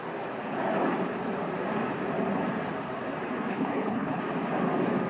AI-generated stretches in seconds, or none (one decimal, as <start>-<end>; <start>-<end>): 3.5-4.2